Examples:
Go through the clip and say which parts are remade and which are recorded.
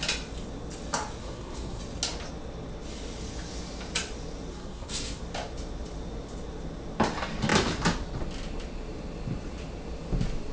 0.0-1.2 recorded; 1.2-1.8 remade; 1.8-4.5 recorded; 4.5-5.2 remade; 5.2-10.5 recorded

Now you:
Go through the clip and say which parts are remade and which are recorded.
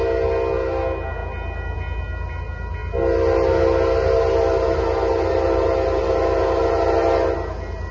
0.0-7.9 recorded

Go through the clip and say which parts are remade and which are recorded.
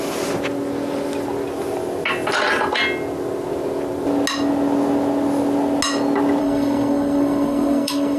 0.0-6.4 recorded; 6.4-8.2 remade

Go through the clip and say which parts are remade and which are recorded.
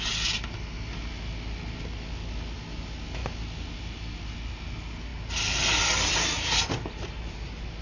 0.0-7.8 recorded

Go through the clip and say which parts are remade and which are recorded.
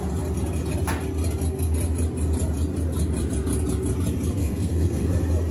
0.0-4.4 recorded; 4.4-5.1 remade; 5.1-5.5 recorded